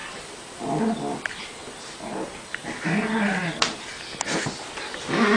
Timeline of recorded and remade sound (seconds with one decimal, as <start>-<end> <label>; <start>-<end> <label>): 0.0-5.4 recorded